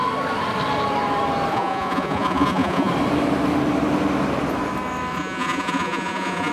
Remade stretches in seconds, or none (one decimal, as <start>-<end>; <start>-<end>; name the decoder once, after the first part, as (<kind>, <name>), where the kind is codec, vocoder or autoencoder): 1.5-2.9 (vocoder, Vocos); 5.1-6.5